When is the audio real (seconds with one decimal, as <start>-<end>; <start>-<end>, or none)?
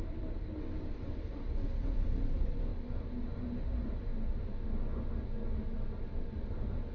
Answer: 2.7-3.2; 4.1-6.5